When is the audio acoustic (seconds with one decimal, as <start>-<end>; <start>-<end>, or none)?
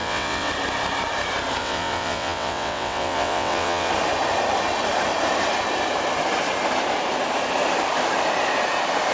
0.5-1.6; 3.9-9.1